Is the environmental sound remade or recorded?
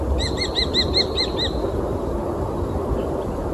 recorded